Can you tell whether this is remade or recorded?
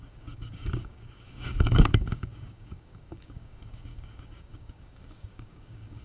remade